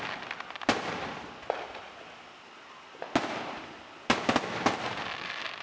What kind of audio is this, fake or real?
real